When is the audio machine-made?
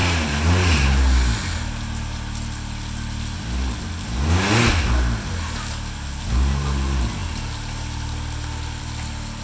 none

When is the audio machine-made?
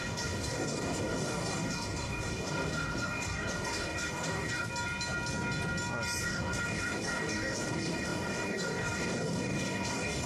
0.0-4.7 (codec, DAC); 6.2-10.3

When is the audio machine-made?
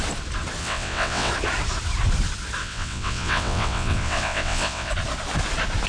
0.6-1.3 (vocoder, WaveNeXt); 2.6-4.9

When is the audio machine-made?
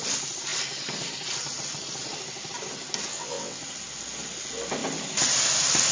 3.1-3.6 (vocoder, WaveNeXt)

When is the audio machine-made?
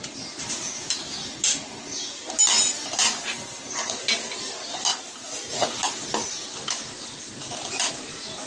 none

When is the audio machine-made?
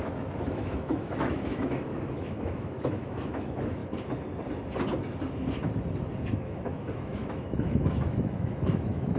0.0-3.8 (autoencoder, DAC-VAE); 6.3-9.2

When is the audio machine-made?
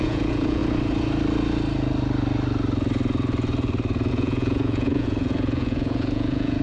0.0-0.6 (vocoder, Vocos); 4.1-6.6